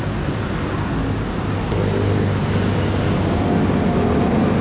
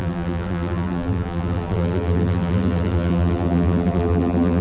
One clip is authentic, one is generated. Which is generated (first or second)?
second